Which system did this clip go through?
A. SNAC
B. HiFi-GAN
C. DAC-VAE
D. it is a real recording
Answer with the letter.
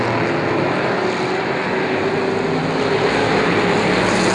D